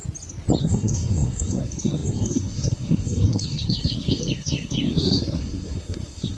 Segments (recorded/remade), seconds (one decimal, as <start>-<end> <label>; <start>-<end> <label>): 0.0-0.6 recorded; 0.6-6.4 remade